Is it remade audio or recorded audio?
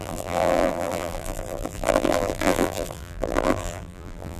remade